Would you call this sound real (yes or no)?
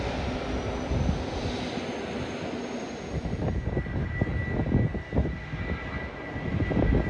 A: yes